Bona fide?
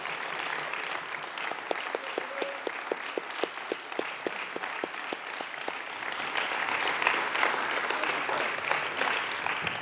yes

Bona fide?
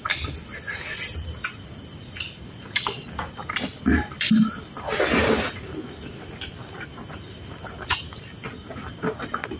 yes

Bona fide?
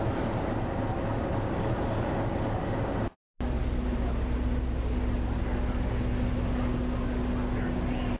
yes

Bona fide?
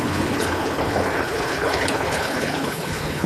no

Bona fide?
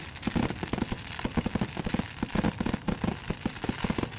yes